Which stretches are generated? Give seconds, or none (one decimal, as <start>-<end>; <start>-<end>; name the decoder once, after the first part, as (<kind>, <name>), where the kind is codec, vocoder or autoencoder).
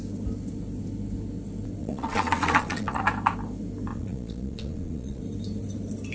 1.8-3.0 (vocoder, Vocos); 3.9-5.2